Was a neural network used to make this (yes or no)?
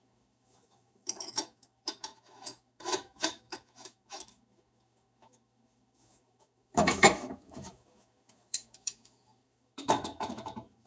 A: yes